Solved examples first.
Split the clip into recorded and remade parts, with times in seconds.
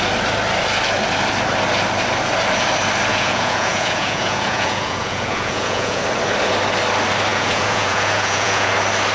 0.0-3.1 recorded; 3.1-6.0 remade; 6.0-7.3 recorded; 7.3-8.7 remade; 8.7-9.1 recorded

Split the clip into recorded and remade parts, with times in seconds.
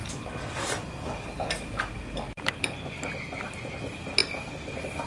0.0-5.1 recorded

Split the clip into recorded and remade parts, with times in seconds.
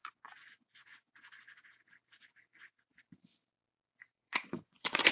0.0-1.1 remade; 1.1-4.1 recorded; 4.1-5.1 remade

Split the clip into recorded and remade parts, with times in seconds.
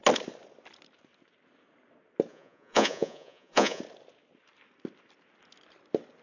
0.0-2.3 recorded; 2.3-3.8 remade; 3.8-6.2 recorded